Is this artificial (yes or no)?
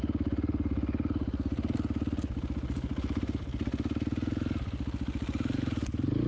no